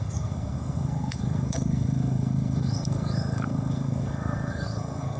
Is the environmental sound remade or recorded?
remade